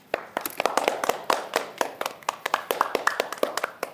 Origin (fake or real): fake